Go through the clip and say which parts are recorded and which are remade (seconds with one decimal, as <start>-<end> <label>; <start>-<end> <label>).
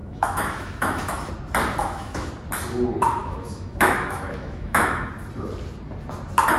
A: 0.0-1.3 remade; 1.3-1.8 recorded; 1.8-2.3 remade; 2.3-3.2 recorded; 3.2-5.1 remade; 5.1-6.6 recorded